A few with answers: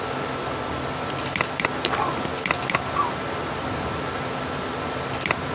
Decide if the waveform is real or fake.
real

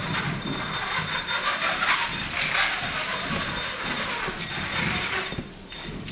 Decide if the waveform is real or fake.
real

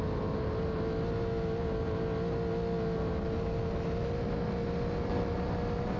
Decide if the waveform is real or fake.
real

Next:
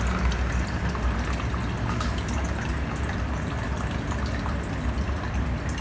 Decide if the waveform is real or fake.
real